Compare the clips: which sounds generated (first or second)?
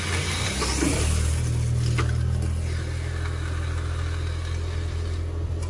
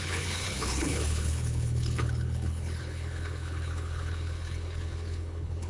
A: second